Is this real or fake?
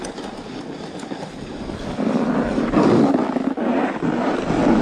real